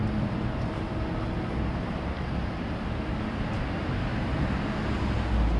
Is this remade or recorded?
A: recorded